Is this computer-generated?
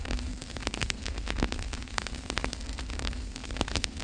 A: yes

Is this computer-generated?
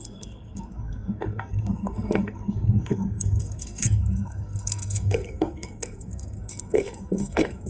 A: yes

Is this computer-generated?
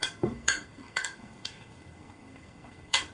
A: yes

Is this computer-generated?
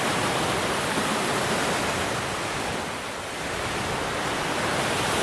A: no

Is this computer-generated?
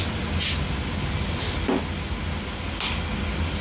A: no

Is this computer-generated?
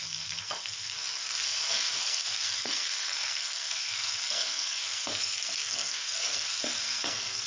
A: yes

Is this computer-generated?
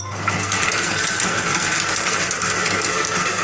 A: yes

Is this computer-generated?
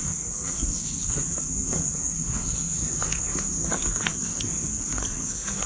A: yes